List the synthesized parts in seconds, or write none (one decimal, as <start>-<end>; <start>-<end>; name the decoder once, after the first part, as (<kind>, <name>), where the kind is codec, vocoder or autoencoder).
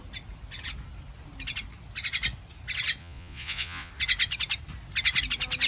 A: 3.0-3.9 (vocoder, Vocos)